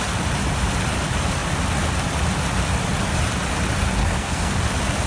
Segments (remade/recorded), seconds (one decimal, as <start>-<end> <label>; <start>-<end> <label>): 0.0-4.0 recorded; 4.0-4.6 remade; 4.6-5.1 recorded